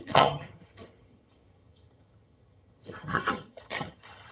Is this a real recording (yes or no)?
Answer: no